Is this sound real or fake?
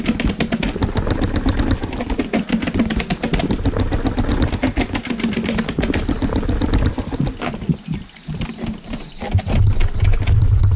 real